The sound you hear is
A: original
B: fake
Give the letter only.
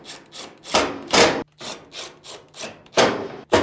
A